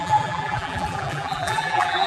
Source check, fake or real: fake